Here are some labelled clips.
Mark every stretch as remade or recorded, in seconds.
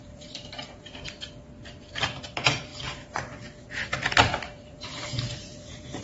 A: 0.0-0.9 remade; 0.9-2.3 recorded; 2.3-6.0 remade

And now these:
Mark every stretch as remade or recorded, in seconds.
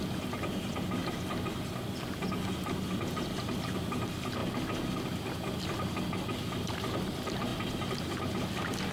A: 0.0-8.9 recorded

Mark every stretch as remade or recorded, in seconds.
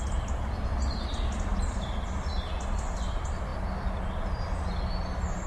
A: 0.0-1.5 recorded; 1.5-2.5 remade; 2.5-5.5 recorded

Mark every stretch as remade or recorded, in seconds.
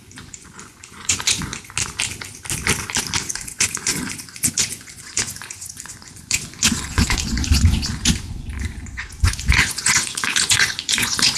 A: 0.0-1.5 remade; 1.5-3.2 recorded; 3.2-11.4 remade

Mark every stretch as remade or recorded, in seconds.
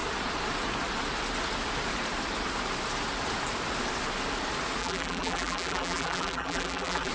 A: 0.0-4.8 recorded; 4.8-7.1 remade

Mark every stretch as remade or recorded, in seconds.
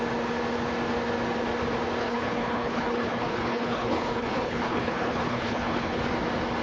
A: 0.0-2.0 recorded; 2.0-6.0 remade; 6.0-6.6 recorded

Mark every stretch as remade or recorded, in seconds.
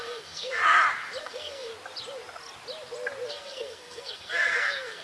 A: 0.0-0.6 remade; 0.6-1.2 recorded; 1.2-1.7 remade; 1.7-3.3 recorded; 3.3-5.0 remade